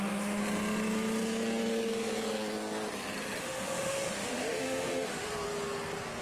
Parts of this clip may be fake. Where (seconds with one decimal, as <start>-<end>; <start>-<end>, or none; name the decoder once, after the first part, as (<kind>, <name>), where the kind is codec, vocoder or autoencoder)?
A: 0.0-0.4 (autoencoder, DAC-VAE); 3.4-5.3